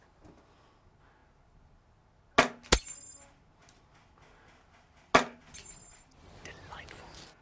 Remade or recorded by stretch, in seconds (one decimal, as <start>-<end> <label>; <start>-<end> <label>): 0.0-7.4 recorded